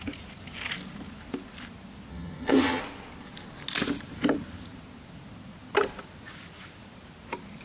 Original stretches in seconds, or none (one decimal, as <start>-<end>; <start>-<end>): 0.0-2.1; 2.8-7.6